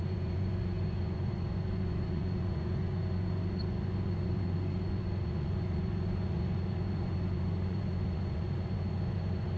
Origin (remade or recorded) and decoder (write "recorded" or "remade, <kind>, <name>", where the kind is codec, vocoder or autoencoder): remade, vocoder, Vocos